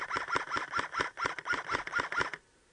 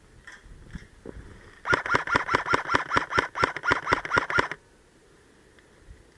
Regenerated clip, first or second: first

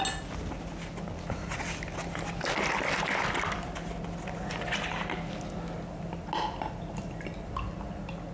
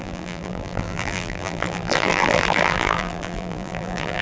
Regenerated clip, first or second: second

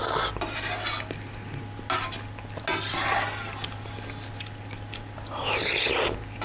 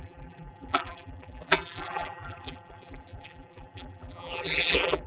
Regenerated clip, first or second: second